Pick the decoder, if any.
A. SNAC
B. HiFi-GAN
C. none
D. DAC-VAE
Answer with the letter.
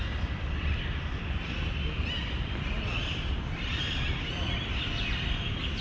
C